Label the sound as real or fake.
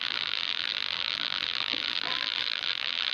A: fake